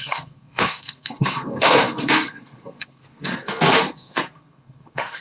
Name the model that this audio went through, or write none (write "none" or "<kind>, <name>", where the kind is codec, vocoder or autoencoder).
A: codec, SNAC